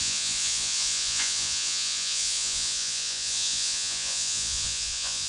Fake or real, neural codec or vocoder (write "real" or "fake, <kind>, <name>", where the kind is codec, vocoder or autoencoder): fake, vocoder, Vocos